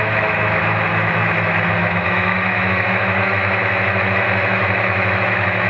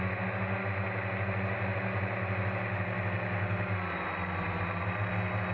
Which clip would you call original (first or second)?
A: second